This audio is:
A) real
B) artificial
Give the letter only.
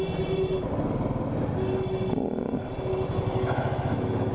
A